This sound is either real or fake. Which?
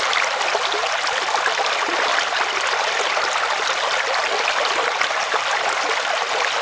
real